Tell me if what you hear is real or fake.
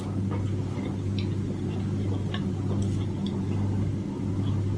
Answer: real